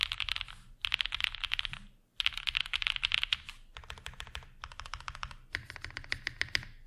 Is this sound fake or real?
real